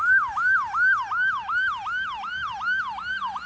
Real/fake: real